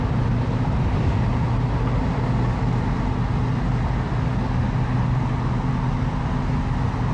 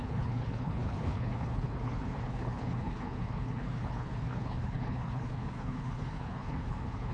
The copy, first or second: second